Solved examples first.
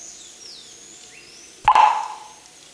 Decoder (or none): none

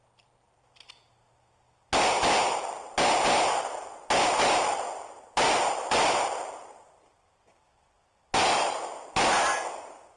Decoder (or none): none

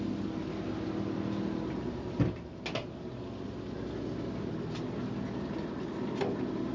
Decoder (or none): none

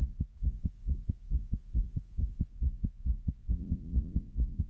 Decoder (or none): vocoder, Vocos